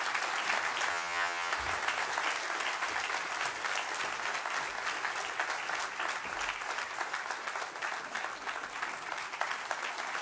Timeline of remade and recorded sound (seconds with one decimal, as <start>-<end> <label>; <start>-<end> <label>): 0.0-0.9 recorded; 0.9-1.5 remade; 1.5-10.2 recorded